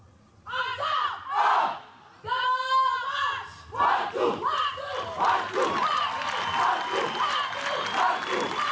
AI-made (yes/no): no